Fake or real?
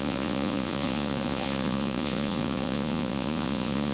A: fake